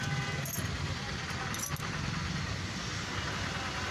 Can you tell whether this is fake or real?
real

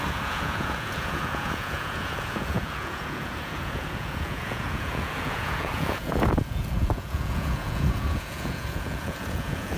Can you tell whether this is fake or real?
fake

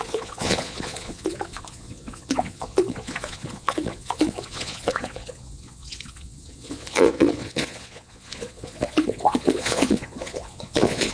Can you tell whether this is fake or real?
fake